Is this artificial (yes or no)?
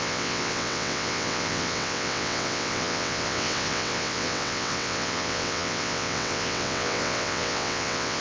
yes